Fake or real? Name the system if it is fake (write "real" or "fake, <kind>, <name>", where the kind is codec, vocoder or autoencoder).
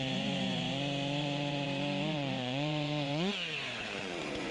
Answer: fake, vocoder, Vocos